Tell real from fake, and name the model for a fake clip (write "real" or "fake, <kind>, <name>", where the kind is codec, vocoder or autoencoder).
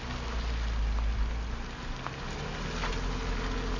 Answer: real